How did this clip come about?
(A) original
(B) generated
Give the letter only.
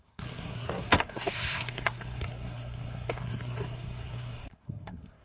B